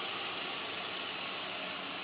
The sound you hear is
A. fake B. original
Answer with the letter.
B